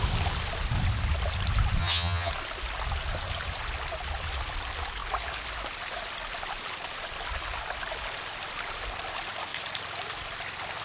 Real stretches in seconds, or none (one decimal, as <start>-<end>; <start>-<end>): 0.0-1.8; 2.3-10.8